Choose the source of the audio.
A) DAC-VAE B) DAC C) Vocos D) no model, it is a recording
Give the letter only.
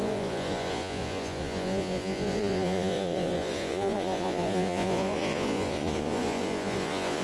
C